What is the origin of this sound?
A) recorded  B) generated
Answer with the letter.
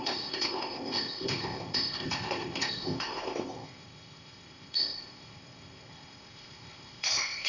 B